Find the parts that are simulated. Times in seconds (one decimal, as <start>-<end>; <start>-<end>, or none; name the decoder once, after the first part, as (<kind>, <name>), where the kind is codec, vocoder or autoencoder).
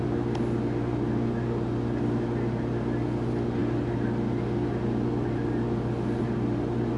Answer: none